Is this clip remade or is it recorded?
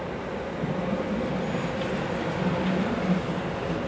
recorded